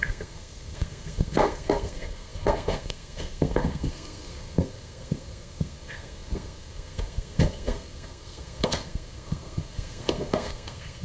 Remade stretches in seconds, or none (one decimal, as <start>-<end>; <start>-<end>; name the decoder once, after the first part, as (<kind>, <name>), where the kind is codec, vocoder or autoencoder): 0.0-11.0 (codec, SNAC)